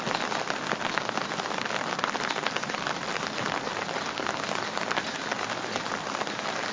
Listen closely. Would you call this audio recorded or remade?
recorded